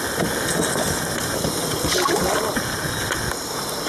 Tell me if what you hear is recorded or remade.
recorded